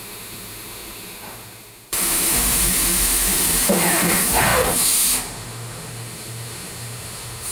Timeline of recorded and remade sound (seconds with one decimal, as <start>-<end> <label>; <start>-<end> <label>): 0.0-7.5 remade